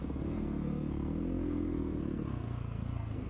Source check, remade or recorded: remade